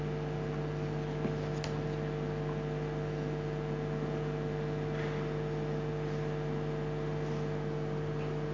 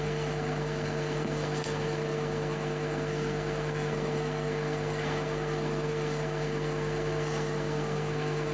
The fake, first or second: second